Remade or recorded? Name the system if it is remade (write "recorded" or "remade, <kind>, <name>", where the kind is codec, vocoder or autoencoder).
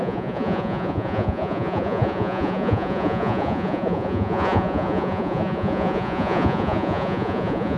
remade, vocoder, Vocos